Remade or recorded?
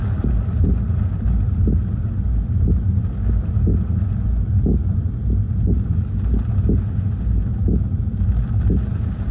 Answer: recorded